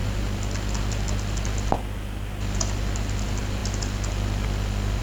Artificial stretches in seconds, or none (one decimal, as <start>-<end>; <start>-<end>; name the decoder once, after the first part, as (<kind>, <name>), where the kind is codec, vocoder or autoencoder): none